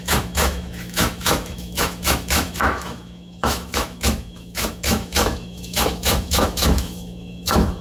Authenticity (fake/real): fake